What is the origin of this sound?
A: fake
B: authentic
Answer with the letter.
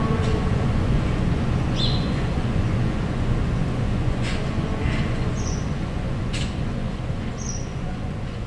A